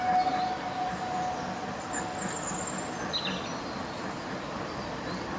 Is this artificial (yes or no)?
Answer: no